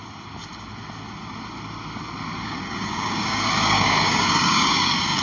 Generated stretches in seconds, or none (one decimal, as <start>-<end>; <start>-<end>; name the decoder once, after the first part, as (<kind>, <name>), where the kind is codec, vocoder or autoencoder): 2.3-5.2 (codec, DAC)